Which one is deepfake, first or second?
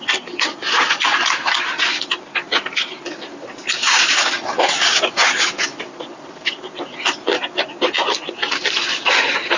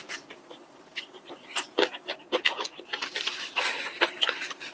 second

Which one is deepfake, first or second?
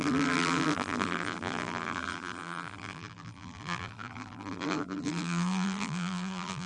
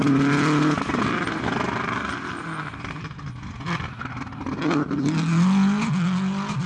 first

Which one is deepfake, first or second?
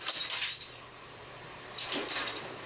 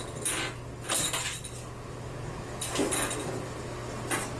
first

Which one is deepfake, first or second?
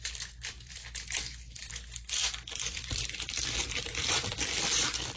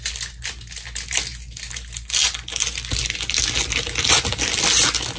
first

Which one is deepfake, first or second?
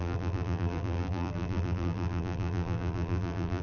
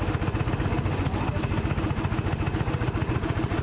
first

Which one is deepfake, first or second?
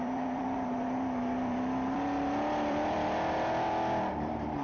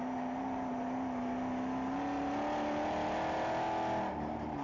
first